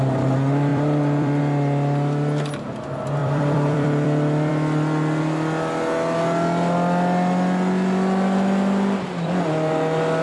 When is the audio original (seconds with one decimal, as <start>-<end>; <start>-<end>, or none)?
0.0-0.7; 1.4-3.2; 4.5-10.2